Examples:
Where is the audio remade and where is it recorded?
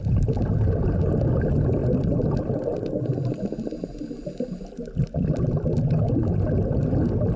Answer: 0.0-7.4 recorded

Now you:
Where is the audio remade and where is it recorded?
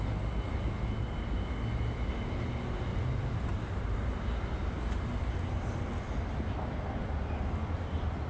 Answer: 0.0-2.9 recorded; 2.9-4.4 remade; 4.4-8.3 recorded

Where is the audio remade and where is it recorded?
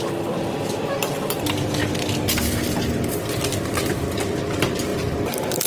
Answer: 0.0-4.9 recorded; 4.9-5.7 remade